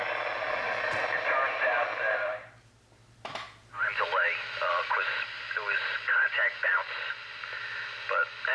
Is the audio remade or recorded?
recorded